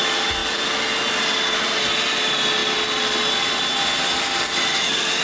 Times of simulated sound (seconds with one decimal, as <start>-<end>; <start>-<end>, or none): none